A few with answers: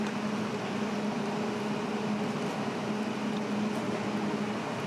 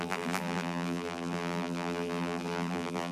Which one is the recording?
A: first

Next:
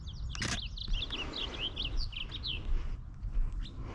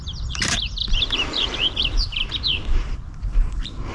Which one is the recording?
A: first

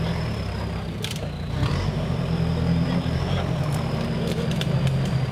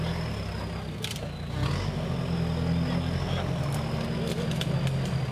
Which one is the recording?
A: second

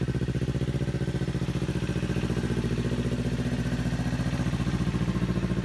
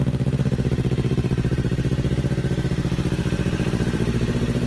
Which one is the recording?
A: first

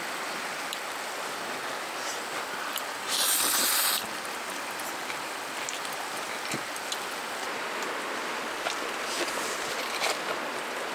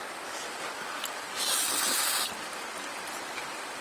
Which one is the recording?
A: first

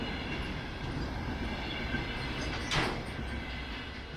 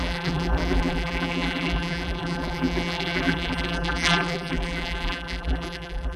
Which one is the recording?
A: first